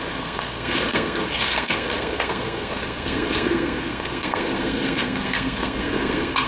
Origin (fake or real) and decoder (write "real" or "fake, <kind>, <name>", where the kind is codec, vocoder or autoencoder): fake, codec, SNAC